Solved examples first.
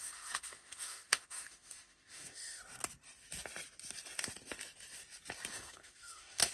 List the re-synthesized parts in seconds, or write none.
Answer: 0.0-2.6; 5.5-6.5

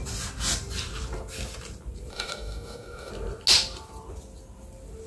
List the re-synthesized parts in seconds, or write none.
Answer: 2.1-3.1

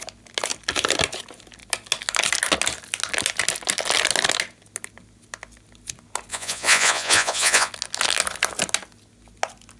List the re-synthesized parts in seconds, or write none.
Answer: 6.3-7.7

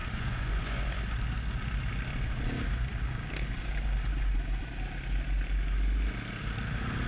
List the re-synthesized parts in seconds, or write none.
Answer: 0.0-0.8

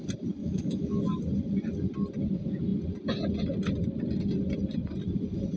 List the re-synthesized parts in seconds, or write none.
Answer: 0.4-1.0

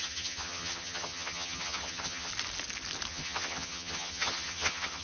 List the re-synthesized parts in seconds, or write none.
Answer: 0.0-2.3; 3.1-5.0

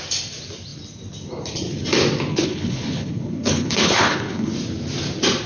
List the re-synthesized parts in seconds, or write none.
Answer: 2.3-4.5

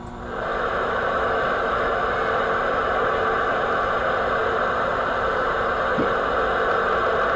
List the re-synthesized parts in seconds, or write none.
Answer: 0.5-1.9